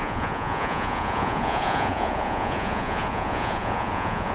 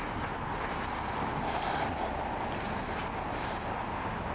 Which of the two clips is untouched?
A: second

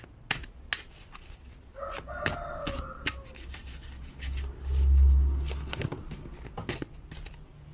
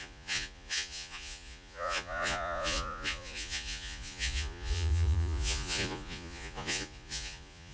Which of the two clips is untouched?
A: first